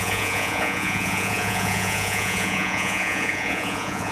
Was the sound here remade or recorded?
remade